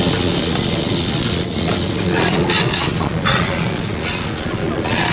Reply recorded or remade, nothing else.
remade